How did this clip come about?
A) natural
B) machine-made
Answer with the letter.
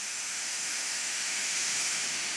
B